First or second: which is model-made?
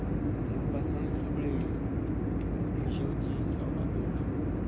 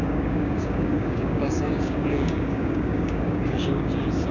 second